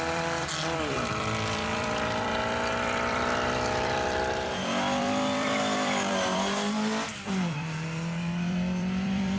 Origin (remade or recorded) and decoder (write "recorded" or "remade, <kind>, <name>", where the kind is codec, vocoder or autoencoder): remade, vocoder, BigVGAN v2